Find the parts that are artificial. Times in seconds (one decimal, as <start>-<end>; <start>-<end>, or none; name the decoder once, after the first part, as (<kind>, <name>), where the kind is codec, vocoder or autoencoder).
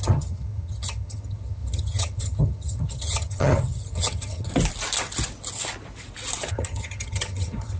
0.0-4.5 (vocoder, HiFi-GAN); 6.5-7.8